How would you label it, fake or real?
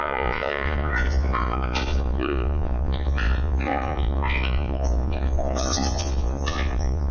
fake